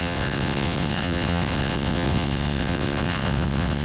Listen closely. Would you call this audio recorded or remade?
remade